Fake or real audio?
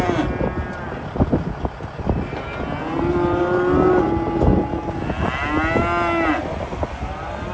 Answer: real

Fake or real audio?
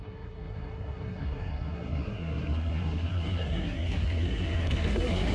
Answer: fake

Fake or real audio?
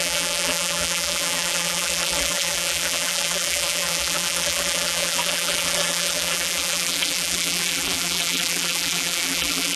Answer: fake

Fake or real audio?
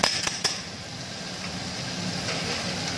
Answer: fake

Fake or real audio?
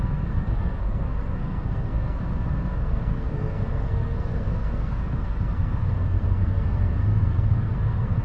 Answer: fake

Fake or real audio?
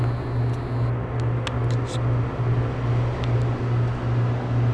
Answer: real